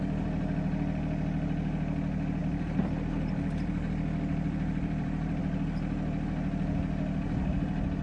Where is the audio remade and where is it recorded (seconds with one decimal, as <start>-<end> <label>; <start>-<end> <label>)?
0.0-2.4 recorded; 2.4-5.4 remade; 5.4-8.0 recorded